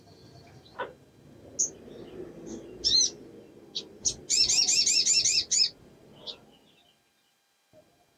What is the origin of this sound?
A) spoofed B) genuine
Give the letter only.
B